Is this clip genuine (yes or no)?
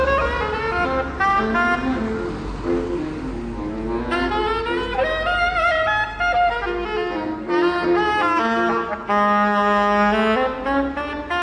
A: yes